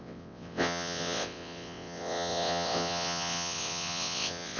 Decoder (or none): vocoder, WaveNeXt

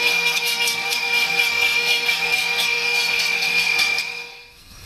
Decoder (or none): codec, SNAC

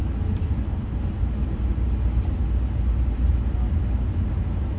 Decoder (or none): none